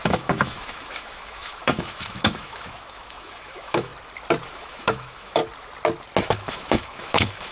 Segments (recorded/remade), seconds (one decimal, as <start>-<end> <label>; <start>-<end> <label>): 0.0-3.9 remade; 3.9-4.5 recorded; 4.5-5.4 remade; 5.4-6.2 recorded; 6.2-7.5 remade